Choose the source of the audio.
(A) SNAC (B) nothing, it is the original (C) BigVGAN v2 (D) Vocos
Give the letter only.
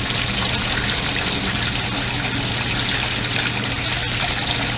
B